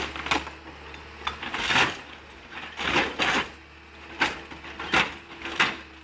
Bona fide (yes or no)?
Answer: yes